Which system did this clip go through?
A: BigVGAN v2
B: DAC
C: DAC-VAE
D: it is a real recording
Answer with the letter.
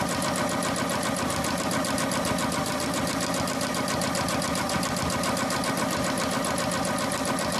D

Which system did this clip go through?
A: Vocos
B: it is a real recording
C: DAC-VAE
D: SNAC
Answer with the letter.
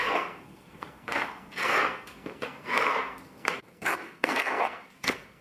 D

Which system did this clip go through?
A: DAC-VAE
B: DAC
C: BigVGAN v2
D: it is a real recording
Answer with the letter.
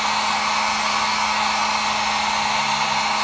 D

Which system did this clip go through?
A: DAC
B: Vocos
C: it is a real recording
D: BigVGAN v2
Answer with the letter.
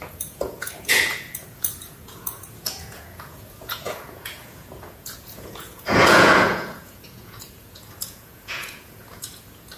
B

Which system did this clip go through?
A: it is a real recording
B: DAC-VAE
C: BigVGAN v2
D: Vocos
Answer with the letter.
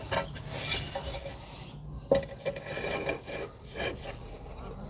A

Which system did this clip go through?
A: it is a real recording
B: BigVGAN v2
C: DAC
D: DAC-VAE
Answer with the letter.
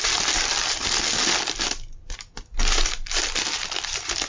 A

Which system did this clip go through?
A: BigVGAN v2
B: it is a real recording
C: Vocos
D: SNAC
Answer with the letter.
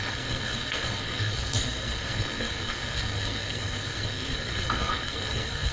D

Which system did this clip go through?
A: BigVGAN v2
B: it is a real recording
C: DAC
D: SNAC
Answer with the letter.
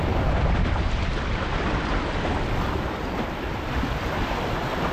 A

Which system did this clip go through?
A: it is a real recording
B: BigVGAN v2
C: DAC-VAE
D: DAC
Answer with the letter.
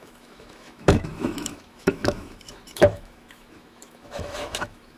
C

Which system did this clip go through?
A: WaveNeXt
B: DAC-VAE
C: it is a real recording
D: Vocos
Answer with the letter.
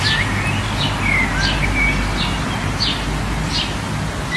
C